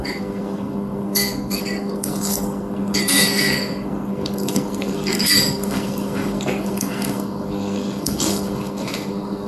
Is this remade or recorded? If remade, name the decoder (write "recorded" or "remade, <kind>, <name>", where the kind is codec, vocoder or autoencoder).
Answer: remade, codec, SNAC